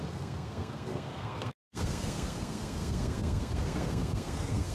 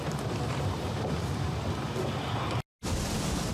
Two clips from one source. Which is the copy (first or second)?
first